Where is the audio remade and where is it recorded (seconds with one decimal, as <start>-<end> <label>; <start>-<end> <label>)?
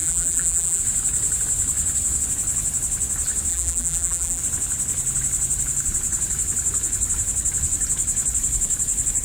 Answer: 0.0-0.8 remade; 0.8-3.5 recorded; 3.5-4.4 remade; 4.4-9.2 recorded